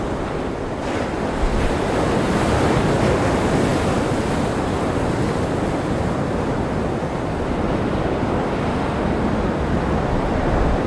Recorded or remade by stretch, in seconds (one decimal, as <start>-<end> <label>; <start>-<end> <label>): 0.0-10.9 recorded